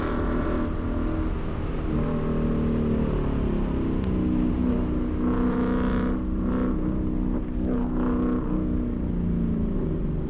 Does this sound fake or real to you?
real